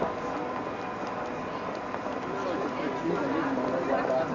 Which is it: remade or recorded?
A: recorded